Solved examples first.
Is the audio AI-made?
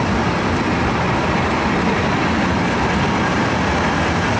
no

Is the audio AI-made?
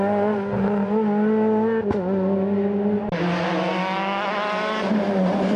no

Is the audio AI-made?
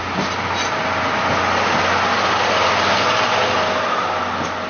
no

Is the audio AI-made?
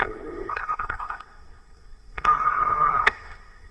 yes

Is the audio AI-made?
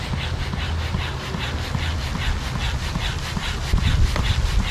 no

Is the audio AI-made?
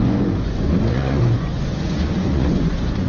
yes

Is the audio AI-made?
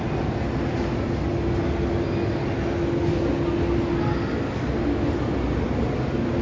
no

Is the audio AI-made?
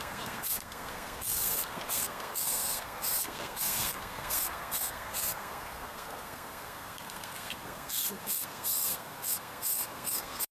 yes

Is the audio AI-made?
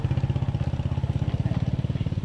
no